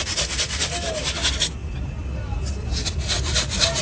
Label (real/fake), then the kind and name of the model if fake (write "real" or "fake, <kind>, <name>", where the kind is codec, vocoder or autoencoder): real